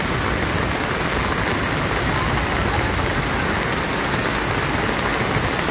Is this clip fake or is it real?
real